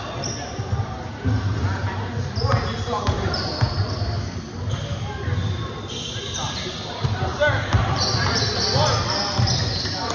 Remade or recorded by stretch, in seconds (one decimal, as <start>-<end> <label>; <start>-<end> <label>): 0.0-2.5 recorded; 2.5-3.5 remade; 3.5-7.3 recorded; 7.3-8.0 remade; 8.0-10.1 recorded